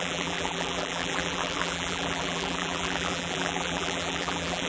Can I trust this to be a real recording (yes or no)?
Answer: no